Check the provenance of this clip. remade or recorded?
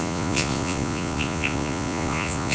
remade